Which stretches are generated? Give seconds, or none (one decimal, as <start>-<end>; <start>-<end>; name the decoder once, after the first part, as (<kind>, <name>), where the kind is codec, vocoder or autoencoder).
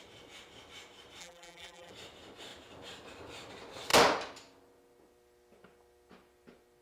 1.2-1.9 (vocoder, BigVGAN v2)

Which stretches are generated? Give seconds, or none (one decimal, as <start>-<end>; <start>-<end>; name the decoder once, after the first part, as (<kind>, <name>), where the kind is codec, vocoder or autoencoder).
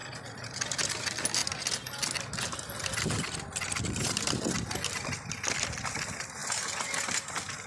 0.0-0.9 (vocoder, BigVGAN v2)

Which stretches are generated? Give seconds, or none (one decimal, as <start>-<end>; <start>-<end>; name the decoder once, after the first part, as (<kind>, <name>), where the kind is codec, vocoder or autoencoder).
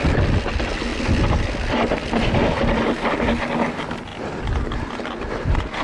0.9-2.8 (vocoder, BigVGAN v2)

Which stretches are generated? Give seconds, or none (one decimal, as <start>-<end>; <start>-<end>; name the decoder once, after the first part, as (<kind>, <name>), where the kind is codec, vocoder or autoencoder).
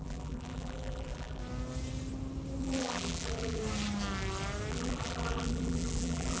0.0-1.4 (vocoder, BigVGAN v2); 2.6-3.6; 4.7-6.4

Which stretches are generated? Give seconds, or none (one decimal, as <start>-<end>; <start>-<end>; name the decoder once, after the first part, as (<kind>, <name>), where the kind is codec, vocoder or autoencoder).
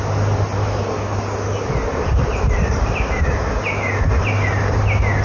1.9-4.8 (vocoder, BigVGAN v2)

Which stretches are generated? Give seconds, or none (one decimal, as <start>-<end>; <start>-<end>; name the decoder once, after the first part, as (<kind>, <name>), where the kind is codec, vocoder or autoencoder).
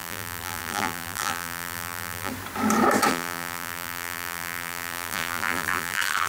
0.0-2.3 (vocoder, BigVGAN v2); 3.1-6.3